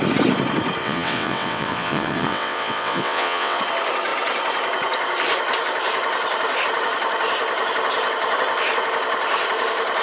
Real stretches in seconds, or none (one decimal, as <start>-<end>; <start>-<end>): 0.0-0.8; 3.6-10.0